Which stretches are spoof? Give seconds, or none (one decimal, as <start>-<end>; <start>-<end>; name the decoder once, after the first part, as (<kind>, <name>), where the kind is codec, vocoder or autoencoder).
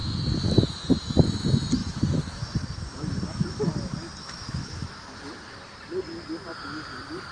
1.8-3.6 (autoencoder, DAC-VAE); 4.2-5.6